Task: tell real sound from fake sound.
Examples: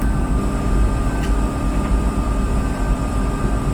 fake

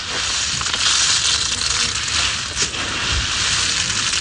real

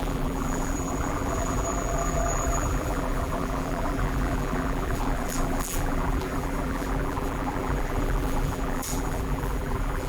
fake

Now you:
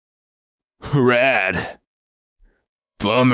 fake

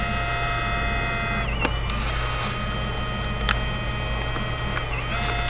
real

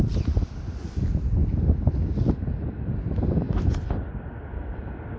real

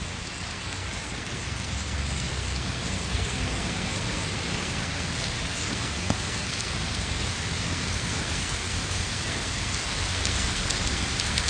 fake